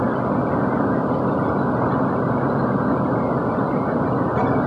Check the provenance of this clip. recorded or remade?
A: recorded